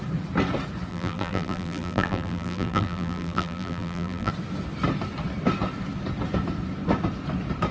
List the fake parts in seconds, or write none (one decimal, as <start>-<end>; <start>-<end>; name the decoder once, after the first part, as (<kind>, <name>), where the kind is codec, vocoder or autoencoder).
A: 0.9-4.3 (vocoder, BigVGAN v2)